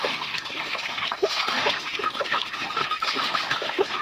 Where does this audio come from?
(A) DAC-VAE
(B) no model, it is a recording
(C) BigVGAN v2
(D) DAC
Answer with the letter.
A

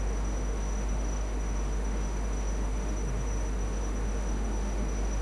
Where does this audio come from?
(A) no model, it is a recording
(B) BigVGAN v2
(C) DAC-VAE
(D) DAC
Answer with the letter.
C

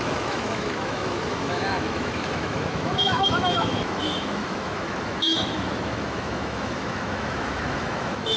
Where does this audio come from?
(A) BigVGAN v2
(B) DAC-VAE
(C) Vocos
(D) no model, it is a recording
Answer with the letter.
B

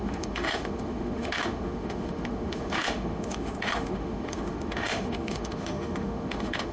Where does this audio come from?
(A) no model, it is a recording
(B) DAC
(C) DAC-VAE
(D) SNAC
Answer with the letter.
C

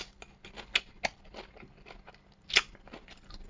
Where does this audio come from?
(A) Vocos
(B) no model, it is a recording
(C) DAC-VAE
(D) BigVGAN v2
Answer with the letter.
B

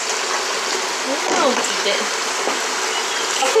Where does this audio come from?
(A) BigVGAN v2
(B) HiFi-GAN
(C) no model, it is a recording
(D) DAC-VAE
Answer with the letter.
C